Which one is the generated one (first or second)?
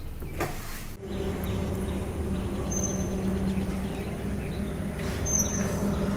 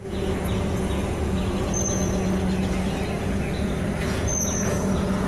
second